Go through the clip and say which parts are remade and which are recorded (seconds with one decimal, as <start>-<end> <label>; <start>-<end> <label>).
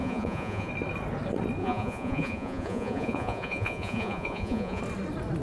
0.0-0.7 remade; 0.7-1.6 recorded; 1.6-4.8 remade; 4.8-5.4 recorded